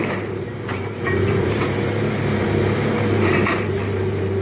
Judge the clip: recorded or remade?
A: remade